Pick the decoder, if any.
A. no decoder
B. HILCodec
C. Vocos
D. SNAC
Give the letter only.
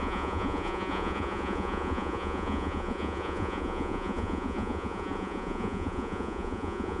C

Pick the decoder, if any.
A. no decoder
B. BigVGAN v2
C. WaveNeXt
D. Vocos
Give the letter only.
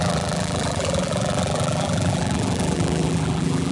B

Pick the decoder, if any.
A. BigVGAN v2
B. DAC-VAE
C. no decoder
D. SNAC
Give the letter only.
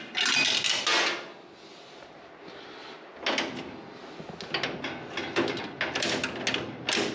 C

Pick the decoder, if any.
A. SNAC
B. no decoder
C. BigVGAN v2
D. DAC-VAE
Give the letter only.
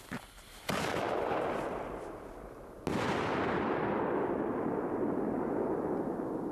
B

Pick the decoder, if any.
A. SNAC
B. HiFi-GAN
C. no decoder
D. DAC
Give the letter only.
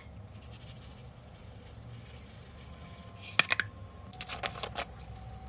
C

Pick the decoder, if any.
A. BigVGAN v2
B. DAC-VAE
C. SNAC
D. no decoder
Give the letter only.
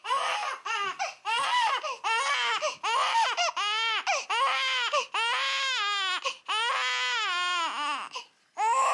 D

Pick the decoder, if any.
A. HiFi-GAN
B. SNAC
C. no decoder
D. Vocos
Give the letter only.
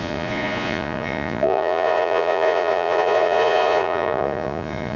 D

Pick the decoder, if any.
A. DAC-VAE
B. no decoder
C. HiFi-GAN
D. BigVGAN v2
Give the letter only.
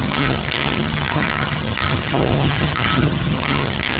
C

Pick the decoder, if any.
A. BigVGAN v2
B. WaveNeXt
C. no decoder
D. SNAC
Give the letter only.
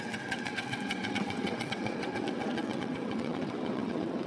B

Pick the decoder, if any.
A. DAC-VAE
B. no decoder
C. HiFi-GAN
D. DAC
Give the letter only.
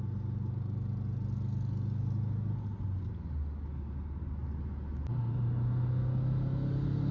B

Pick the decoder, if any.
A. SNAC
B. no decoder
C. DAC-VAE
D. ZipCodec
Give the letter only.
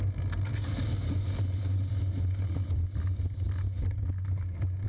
B